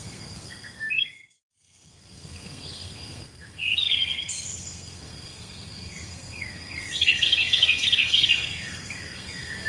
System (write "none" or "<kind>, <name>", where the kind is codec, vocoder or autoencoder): codec, SNAC